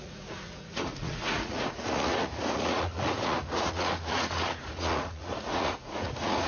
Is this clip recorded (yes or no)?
no